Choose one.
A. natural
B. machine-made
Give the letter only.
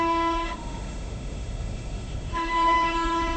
B